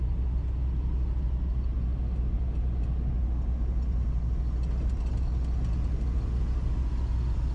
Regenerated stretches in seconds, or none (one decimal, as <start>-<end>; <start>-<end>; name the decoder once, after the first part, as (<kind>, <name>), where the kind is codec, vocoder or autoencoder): none